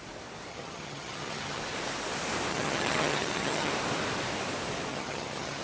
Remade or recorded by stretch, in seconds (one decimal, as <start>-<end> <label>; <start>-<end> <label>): 0.0-0.5 recorded; 0.5-1.6 remade; 1.6-2.5 recorded; 2.5-3.7 remade; 3.7-4.9 recorded; 4.9-5.6 remade